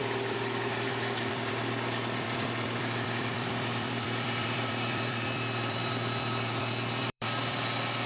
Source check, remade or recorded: remade